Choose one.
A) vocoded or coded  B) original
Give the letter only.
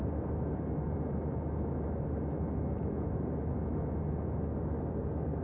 B